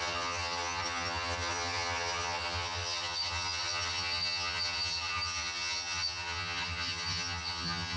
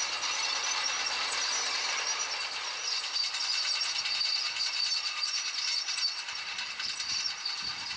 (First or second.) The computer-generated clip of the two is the first